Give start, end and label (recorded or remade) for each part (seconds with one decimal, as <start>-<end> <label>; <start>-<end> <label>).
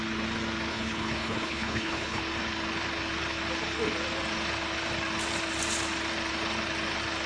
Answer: 0.0-0.7 recorded; 0.7-2.2 remade; 2.2-7.3 recorded